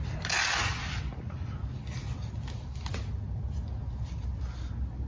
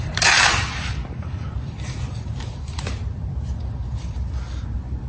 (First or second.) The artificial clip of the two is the second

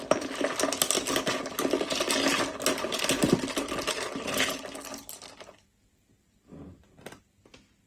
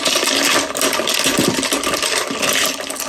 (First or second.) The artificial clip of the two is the second